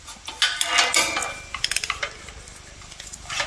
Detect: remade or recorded recorded